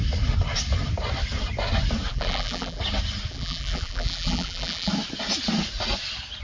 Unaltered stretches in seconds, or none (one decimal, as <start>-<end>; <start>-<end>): 0.0-2.1; 2.8-3.3; 4.9-6.4